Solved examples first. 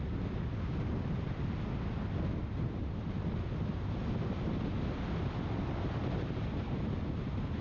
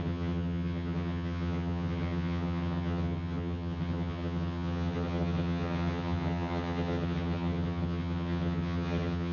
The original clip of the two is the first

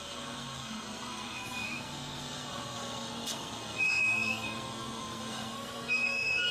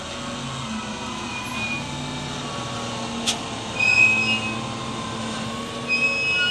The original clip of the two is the second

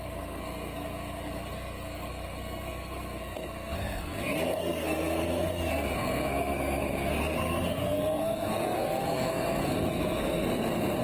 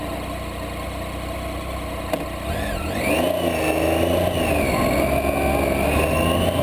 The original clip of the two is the second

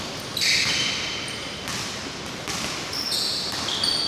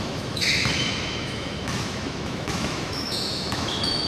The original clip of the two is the first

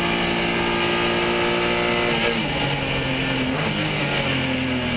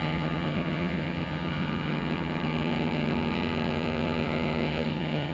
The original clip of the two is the first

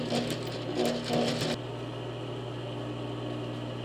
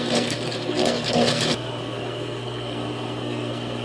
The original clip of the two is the first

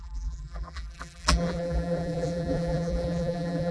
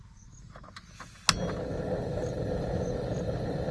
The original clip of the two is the second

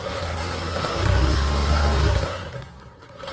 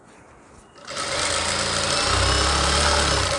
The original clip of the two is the second